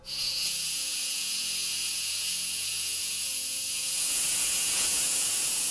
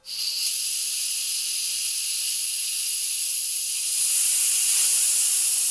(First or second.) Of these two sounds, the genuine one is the second